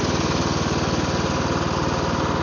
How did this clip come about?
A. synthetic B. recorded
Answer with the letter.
B